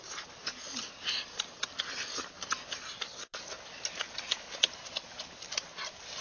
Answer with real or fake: real